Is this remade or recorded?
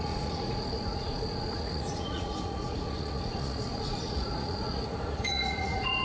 remade